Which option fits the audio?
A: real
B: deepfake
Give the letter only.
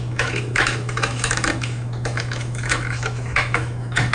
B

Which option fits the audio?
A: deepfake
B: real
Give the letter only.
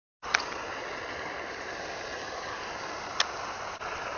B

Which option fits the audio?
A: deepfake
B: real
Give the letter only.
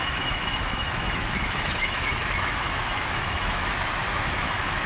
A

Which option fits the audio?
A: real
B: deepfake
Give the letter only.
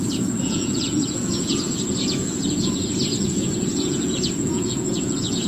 B